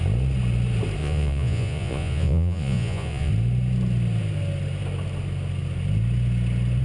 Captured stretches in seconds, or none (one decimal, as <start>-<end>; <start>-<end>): 0.0-1.0; 3.3-6.8